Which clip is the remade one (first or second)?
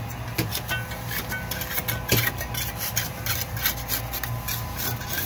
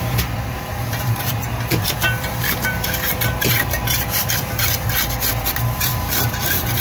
second